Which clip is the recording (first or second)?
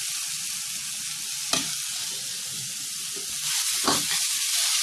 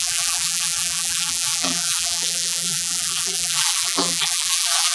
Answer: first